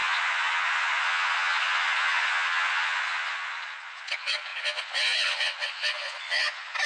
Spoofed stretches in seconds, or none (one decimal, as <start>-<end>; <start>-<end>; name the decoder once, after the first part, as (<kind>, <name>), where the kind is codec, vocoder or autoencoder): 0.0-6.9 (vocoder, Vocos)